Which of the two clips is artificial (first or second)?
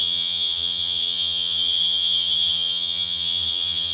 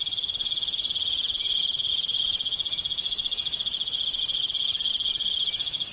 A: first